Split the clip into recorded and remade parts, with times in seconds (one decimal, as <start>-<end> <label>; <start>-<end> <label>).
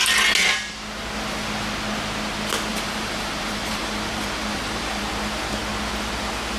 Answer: 0.0-2.7 recorded; 2.7-5.0 remade; 5.0-6.6 recorded